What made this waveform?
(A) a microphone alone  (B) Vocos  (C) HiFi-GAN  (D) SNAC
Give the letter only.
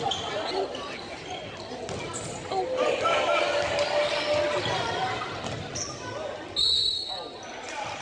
A